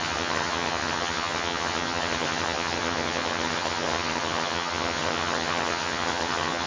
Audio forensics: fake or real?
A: fake